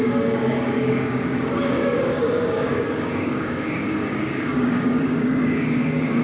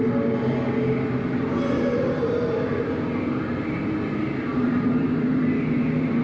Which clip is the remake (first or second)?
first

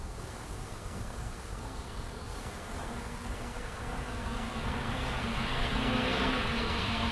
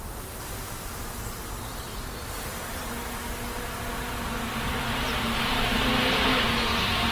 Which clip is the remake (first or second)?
first